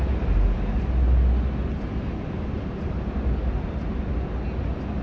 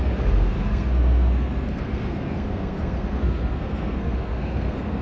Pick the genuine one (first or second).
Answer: first